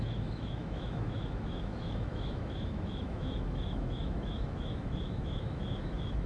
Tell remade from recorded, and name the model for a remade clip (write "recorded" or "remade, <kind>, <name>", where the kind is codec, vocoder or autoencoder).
remade, autoencoder, DAC-VAE